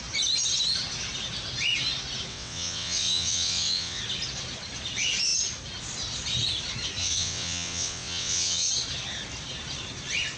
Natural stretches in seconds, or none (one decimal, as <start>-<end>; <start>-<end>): 0.0-2.3; 4.0-7.0; 8.7-10.4